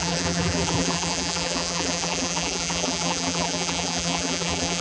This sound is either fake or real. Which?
fake